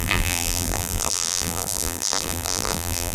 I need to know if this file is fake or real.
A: fake